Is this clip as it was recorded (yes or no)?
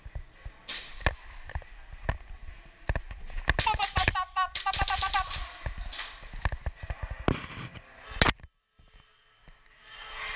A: yes